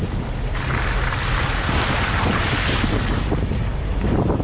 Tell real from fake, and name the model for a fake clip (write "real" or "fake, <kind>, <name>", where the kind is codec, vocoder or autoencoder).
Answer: real